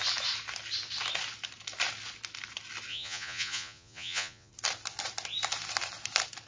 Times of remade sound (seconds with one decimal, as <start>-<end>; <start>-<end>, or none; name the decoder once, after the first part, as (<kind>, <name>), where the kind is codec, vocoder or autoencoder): 2.9-4.5 (vocoder, Vocos)